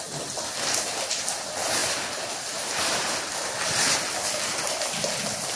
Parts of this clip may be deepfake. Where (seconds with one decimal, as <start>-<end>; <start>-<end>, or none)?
none